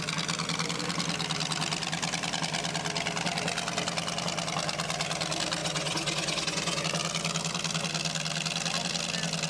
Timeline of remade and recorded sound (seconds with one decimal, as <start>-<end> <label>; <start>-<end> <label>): 0.0-5.6 recorded; 5.6-6.8 remade; 6.8-9.5 recorded